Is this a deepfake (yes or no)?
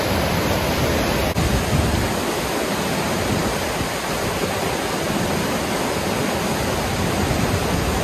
no